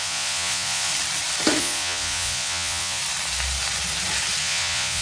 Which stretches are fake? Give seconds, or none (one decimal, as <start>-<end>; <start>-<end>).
0.0-0.9; 1.6-3.0; 4.4-5.0